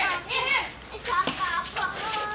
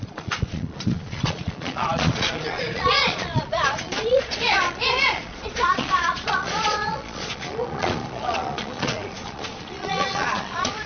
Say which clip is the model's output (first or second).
second